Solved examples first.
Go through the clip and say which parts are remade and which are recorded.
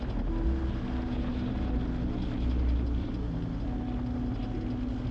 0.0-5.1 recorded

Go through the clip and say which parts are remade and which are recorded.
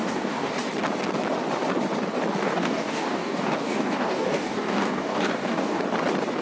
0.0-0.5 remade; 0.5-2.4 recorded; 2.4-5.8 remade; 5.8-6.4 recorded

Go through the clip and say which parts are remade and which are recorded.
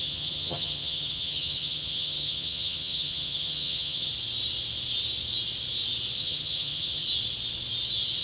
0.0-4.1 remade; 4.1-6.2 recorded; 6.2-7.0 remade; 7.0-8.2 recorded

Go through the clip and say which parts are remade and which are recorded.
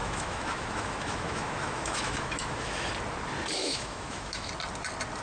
0.0-2.9 remade; 2.9-3.6 recorded; 3.6-4.5 remade; 4.5-5.2 recorded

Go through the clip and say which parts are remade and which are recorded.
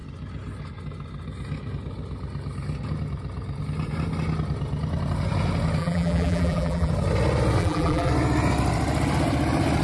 0.0-5.8 recorded; 5.8-6.9 remade; 6.9-7.6 recorded; 7.6-8.1 remade; 8.1-9.8 recorded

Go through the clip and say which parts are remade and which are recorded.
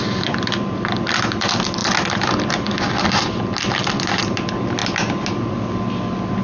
0.0-6.4 recorded